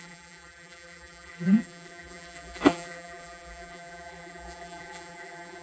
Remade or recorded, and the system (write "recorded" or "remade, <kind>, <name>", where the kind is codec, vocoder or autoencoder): remade, vocoder, BigVGAN v2